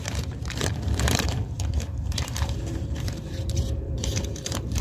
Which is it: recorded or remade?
remade